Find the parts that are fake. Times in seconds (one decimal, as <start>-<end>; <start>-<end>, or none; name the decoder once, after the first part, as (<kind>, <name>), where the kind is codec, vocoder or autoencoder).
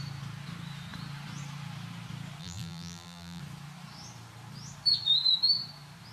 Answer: 2.4-3.4 (vocoder, BigVGAN v2)